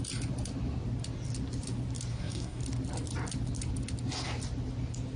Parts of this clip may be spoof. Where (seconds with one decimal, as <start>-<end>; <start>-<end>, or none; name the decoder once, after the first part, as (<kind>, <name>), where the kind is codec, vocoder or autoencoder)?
2.1-2.6 (codec, SNAC)